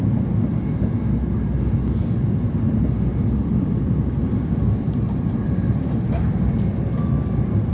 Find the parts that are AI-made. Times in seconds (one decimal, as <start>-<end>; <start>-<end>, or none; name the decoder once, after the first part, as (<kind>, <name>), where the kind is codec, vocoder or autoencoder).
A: 3.1-7.7 (vocoder, BigVGAN v2)